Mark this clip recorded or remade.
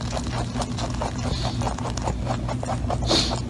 recorded